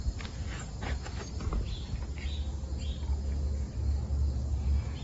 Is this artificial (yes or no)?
no